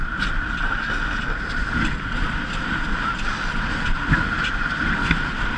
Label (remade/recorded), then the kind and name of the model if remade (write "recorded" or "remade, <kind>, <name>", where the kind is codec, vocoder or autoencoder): recorded